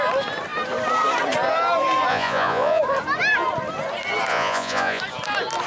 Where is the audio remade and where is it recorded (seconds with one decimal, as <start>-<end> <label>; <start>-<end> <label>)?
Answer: 0.0-2.1 recorded; 2.1-2.8 remade; 2.8-4.3 recorded; 4.3-5.0 remade; 5.0-5.7 recorded